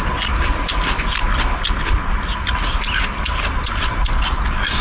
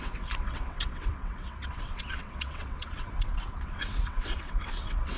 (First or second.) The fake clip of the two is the second